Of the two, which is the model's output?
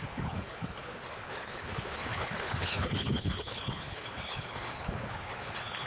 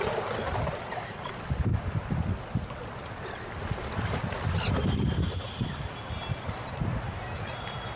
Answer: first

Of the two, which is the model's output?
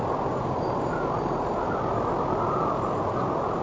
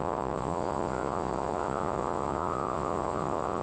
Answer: second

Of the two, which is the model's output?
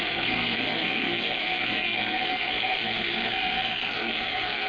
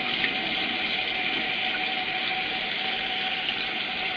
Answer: first